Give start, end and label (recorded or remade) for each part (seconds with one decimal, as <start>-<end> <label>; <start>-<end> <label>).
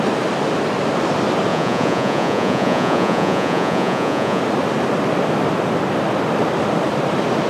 0.0-1.5 recorded; 1.5-4.4 remade; 4.4-7.5 recorded